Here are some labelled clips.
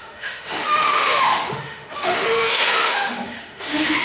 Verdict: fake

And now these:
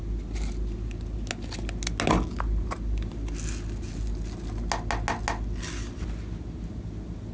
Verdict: real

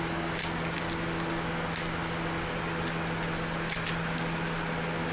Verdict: real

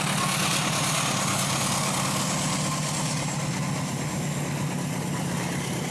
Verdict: real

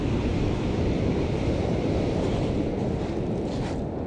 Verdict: real